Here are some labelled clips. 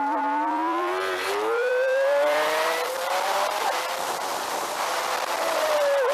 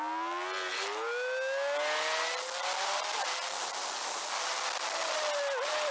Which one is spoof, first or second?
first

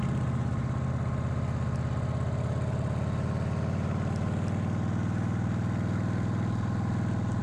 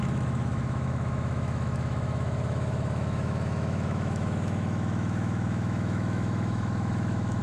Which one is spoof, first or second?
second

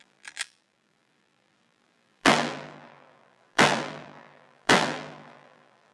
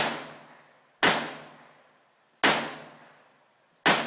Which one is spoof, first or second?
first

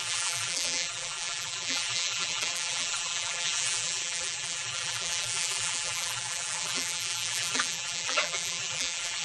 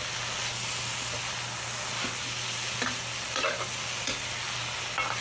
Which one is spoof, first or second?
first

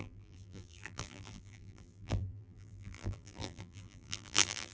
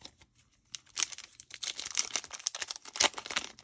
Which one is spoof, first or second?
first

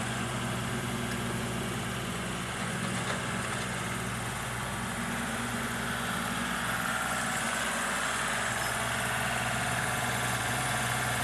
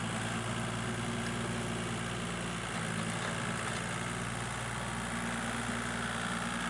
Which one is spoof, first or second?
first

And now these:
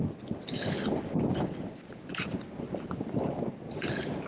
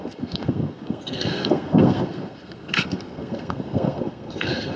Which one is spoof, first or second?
second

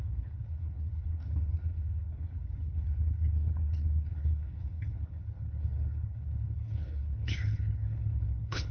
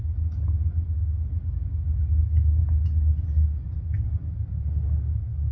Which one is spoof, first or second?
first